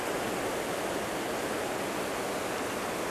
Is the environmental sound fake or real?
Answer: real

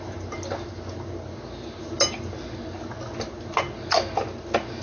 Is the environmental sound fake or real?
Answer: real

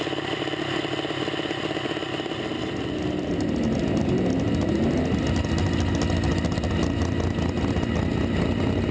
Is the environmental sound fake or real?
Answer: real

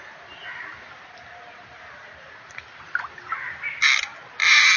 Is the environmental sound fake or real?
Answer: real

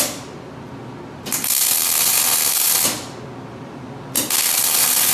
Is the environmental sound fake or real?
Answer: real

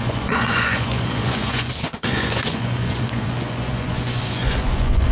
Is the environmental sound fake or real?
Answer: fake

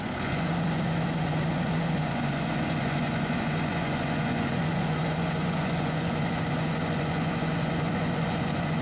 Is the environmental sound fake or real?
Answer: fake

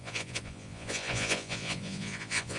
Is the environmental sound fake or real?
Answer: fake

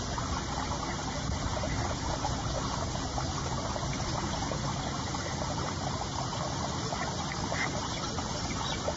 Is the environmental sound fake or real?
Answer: real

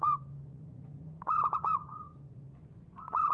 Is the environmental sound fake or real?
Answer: fake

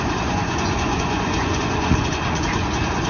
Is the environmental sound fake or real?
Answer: fake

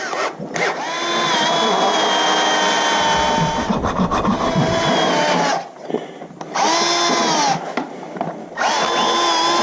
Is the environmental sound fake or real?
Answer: real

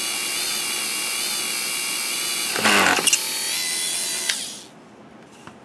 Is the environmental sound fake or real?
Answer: real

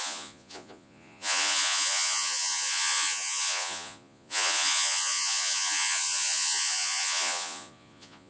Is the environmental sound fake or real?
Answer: fake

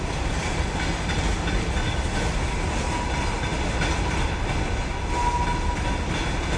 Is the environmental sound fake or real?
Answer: real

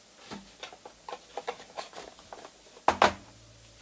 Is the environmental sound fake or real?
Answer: real